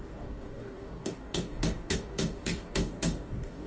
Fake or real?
fake